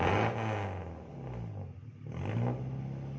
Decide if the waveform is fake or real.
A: real